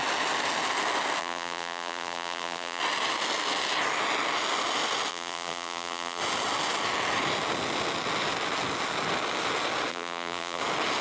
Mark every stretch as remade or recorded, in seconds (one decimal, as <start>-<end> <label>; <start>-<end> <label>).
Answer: 0.0-1.2 recorded; 1.2-2.8 remade; 2.8-5.1 recorded; 5.1-6.2 remade; 6.2-9.9 recorded; 9.9-10.6 remade; 10.6-11.0 recorded